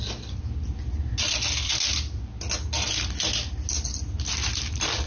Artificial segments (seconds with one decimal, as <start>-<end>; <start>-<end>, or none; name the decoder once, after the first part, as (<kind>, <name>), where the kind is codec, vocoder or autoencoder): none